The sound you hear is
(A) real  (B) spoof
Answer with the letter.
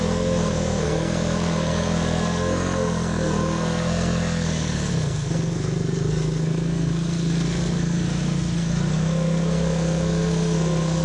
B